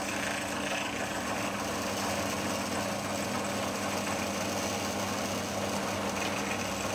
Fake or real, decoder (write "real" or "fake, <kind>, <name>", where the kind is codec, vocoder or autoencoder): real